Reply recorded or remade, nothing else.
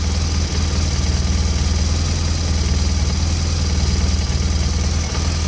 recorded